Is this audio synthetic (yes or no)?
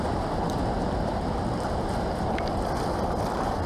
no